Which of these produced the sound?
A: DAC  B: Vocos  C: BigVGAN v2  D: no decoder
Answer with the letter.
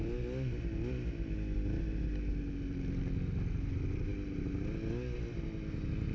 D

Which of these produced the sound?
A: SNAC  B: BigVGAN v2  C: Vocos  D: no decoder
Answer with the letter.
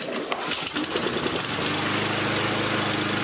D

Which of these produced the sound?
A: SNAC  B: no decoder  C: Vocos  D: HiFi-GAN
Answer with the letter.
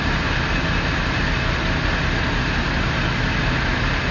B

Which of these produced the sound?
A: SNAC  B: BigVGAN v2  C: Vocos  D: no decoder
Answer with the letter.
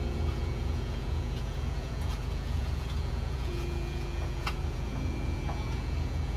C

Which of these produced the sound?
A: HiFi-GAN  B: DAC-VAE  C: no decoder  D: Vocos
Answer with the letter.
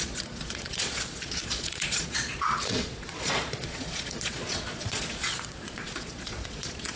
D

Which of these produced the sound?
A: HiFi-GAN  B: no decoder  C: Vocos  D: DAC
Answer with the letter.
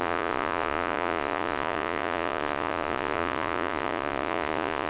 C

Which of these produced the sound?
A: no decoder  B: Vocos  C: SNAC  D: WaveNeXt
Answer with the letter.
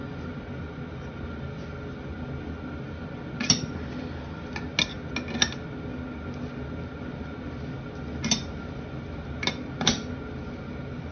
A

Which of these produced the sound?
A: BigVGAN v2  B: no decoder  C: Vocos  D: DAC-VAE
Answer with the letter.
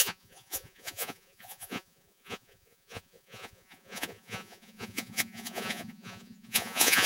C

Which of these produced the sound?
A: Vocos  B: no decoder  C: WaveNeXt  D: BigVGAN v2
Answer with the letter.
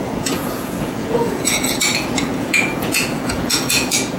A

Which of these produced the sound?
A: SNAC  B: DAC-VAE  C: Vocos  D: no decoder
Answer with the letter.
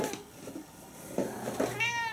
D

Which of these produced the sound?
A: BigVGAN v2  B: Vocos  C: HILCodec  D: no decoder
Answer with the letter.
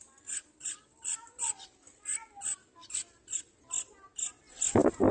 D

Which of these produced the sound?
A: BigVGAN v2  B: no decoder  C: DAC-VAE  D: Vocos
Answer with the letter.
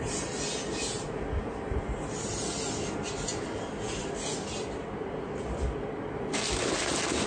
B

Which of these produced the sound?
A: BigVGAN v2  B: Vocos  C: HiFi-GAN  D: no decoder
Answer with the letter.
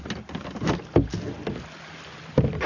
D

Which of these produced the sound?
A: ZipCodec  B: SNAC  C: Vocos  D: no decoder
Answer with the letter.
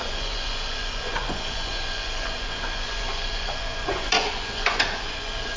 C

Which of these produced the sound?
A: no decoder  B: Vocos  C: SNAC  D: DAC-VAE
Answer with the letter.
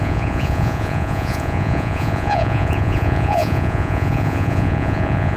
B